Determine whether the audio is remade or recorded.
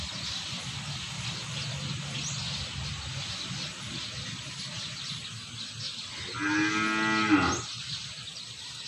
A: recorded